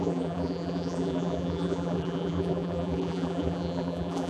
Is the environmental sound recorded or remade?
remade